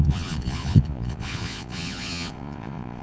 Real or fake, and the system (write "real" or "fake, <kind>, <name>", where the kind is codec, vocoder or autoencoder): fake, vocoder, Vocos